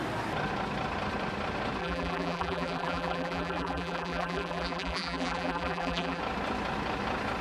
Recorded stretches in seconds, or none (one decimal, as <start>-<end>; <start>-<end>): 0.0-1.8; 6.2-7.4